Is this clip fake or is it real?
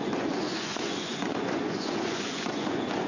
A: fake